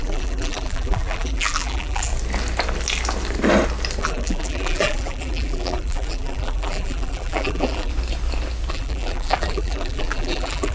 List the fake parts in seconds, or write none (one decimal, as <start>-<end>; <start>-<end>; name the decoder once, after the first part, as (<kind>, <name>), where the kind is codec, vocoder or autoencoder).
0.0-2.1 (vocoder, BigVGAN v2); 4.0-7.9; 8.7-10.7